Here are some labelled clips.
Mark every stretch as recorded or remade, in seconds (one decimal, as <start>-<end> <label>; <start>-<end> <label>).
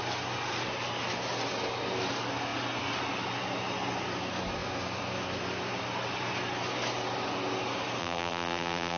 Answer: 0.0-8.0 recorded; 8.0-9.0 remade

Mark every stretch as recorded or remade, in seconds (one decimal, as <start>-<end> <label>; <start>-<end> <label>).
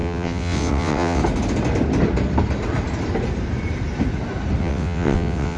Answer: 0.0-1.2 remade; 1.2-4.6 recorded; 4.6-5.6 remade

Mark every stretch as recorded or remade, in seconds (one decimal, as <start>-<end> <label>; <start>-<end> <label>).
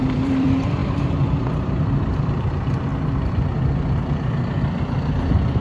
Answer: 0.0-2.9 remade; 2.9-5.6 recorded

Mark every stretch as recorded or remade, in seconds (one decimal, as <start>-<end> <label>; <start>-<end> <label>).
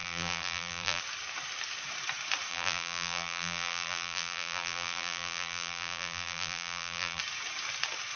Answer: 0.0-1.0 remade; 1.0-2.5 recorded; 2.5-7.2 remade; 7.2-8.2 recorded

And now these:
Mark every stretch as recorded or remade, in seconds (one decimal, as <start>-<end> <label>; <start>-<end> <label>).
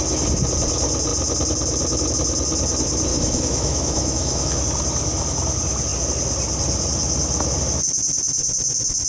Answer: 0.0-3.1 recorded; 3.1-4.6 remade; 4.6-9.1 recorded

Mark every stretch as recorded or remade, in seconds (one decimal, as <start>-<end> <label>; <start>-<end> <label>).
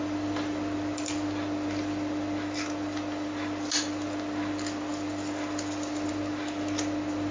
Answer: 0.0-7.3 recorded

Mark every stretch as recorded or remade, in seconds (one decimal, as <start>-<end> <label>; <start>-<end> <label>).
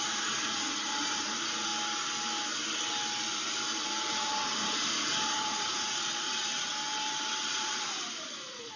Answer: 0.0-1.7 remade; 1.7-3.8 recorded; 3.8-6.7 remade; 6.7-7.6 recorded; 7.6-8.8 remade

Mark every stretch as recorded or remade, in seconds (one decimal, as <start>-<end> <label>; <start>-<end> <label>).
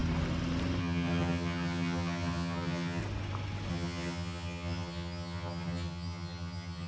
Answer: 0.0-0.8 recorded; 0.8-3.0 remade; 3.0-3.7 recorded; 3.7-6.9 remade